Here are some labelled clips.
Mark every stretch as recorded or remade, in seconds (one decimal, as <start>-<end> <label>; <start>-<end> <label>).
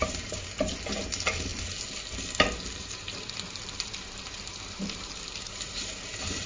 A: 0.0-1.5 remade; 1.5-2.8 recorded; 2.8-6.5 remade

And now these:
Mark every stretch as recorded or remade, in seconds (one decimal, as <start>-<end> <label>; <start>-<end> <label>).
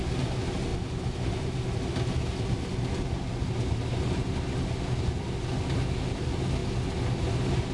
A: 0.0-7.7 recorded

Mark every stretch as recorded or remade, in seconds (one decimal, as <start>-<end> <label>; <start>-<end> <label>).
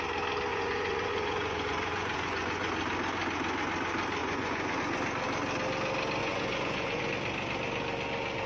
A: 0.0-0.5 recorded; 0.5-2.7 remade; 2.7-4.2 recorded; 4.2-4.8 remade; 4.8-6.2 recorded; 6.2-7.0 remade; 7.0-8.5 recorded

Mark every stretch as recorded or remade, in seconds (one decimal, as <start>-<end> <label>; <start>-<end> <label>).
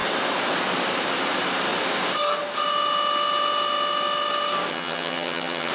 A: 0.0-4.7 recorded; 4.7-5.7 remade